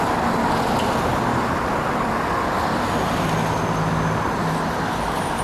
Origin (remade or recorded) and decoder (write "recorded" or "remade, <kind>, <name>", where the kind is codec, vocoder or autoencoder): recorded